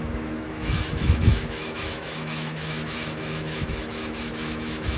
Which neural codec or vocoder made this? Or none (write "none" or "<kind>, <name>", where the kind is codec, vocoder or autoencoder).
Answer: autoencoder, DAC-VAE